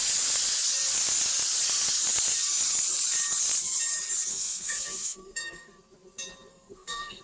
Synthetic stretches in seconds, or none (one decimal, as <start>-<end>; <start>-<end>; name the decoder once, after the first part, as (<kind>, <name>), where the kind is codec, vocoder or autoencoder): 4.3-5.8 (codec, SNAC); 6.5-7.2